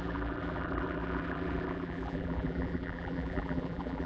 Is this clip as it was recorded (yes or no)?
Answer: no